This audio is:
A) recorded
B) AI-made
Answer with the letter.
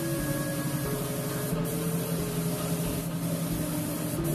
A